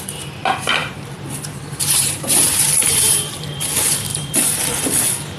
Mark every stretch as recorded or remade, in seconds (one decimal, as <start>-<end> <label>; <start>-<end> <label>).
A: 0.0-0.8 recorded; 0.8-3.4 remade; 3.4-4.1 recorded; 4.1-4.6 remade; 4.6-5.4 recorded